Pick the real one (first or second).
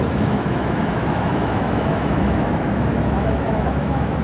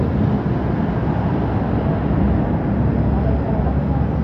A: second